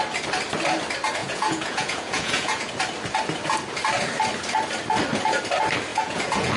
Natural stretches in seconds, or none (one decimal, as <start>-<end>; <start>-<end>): 0.0-1.2; 2.7-5.9